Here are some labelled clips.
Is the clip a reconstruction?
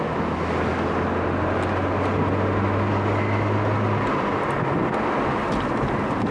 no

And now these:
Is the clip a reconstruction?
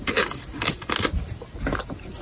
no